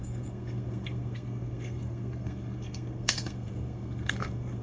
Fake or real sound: fake